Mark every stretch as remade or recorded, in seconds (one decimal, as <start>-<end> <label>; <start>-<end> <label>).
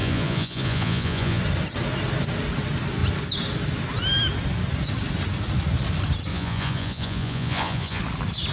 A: 0.0-1.4 remade; 1.4-6.3 recorded; 6.3-8.0 remade; 8.0-8.5 recorded